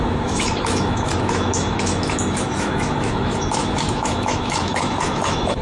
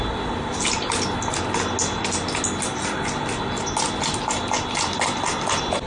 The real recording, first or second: second